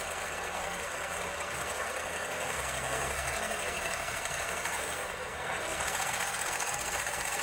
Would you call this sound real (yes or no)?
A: no